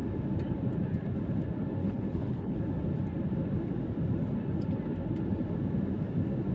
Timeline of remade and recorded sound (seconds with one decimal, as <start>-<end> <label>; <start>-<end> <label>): 0.0-1.8 recorded; 1.8-2.6 remade; 2.6-6.5 recorded